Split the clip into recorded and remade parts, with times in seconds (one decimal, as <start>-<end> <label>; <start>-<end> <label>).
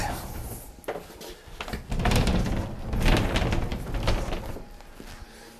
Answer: 0.0-5.6 recorded